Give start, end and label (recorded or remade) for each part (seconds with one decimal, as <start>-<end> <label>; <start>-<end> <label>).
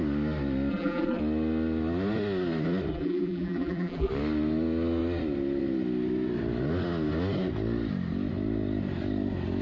0.0-0.7 recorded; 0.7-1.2 remade; 1.2-2.9 recorded; 2.9-4.1 remade; 4.1-9.6 recorded